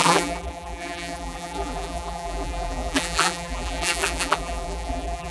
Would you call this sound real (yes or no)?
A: no